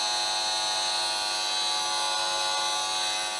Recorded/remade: recorded